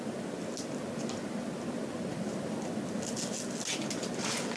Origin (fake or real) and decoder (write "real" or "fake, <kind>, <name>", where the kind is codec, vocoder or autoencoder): real